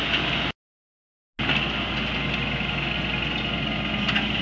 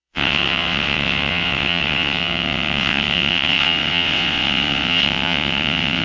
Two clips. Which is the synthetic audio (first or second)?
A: second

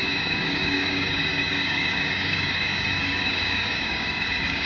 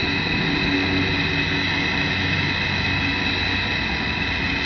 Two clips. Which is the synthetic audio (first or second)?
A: first